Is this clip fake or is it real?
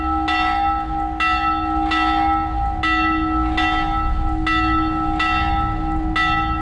real